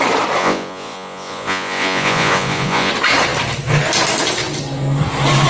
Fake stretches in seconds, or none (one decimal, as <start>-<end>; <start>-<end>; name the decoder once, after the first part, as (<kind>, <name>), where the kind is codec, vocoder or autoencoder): 0.4-2.9 (vocoder, Vocos)